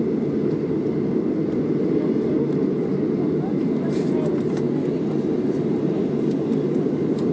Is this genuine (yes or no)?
yes